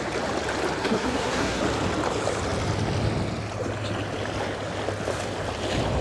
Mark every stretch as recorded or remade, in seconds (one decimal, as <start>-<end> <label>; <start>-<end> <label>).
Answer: 0.0-0.8 recorded; 0.8-1.6 remade; 1.6-6.0 recorded